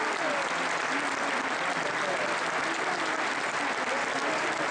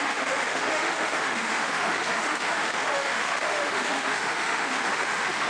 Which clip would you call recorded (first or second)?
first